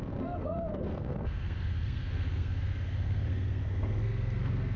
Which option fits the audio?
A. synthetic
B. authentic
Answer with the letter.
A